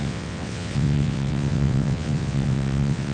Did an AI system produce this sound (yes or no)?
yes